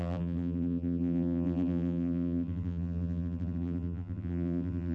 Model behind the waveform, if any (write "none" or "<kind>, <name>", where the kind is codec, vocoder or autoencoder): vocoder, BigVGAN v2